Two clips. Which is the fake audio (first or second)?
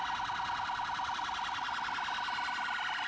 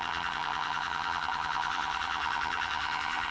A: second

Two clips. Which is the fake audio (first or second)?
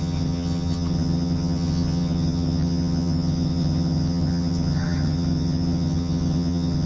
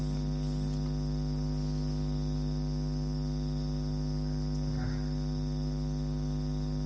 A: first